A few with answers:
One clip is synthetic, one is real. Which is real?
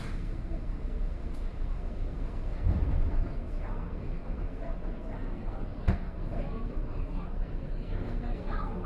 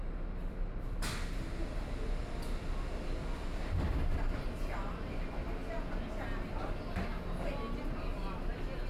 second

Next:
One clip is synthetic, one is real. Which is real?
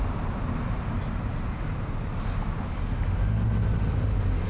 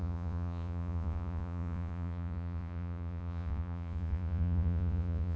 first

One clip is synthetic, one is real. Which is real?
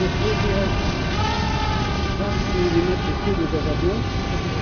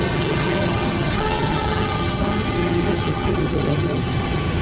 first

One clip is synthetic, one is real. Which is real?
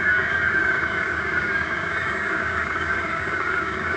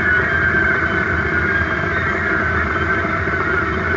second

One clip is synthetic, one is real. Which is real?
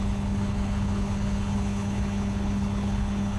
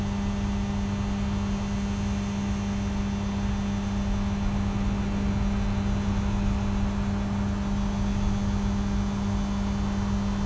second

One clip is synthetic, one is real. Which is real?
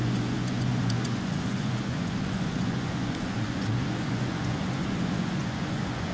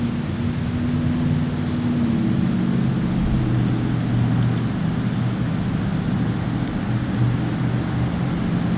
second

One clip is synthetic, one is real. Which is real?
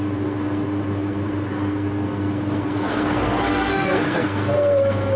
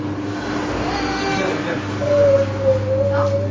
second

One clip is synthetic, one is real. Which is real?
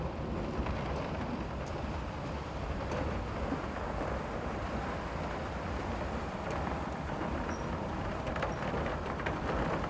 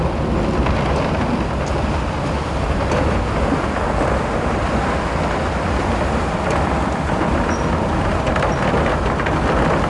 second